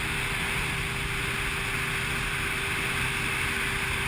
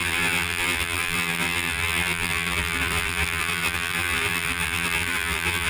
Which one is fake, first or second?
second